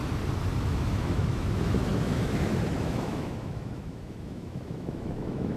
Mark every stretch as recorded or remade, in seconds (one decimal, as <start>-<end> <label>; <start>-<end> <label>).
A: 0.0-0.6 recorded; 0.6-5.6 remade